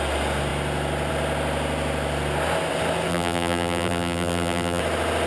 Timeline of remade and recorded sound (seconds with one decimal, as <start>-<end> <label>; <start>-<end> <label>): 0.0-3.1 recorded; 3.1-4.8 remade; 4.8-5.3 recorded

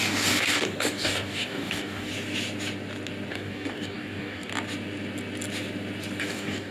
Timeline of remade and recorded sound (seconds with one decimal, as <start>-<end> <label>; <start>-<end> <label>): 0.0-2.1 remade; 2.1-3.3 recorded; 3.3-4.5 remade; 4.5-6.2 recorded; 6.2-6.7 remade

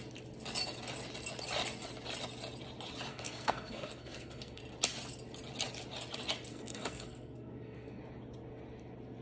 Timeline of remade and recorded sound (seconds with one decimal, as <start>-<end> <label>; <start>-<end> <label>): 0.0-3.1 recorded; 3.1-4.6 remade; 4.6-6.5 recorded; 6.5-8.0 remade; 8.0-9.2 recorded